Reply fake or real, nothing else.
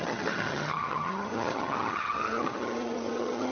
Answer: fake